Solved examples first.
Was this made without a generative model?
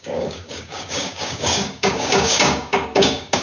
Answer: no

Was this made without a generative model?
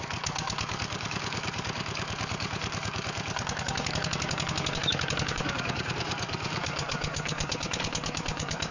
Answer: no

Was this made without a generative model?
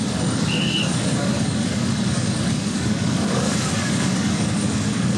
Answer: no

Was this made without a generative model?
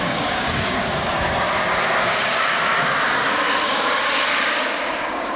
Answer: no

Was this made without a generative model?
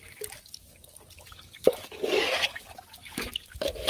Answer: no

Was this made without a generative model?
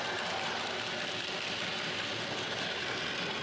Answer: yes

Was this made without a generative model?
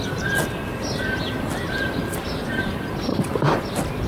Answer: yes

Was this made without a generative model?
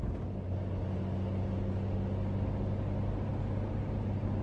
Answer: yes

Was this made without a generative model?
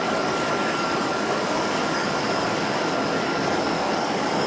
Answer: no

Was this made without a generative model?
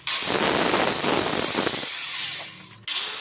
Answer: yes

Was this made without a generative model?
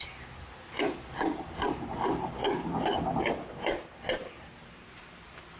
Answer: yes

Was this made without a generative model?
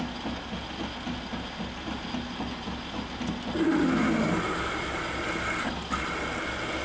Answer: yes